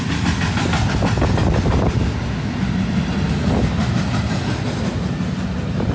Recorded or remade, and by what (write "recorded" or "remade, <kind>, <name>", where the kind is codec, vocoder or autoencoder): recorded